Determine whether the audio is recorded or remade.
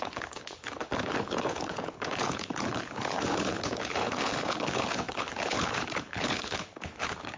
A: remade